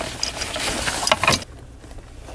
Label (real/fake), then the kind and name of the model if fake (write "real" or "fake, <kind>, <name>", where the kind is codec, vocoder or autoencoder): real